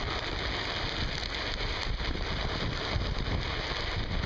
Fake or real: real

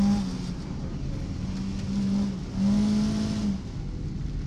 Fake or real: real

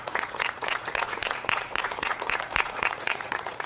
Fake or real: fake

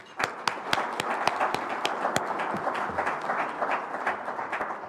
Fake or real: real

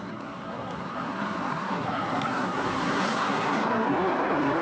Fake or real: fake